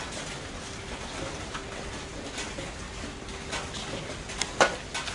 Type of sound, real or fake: real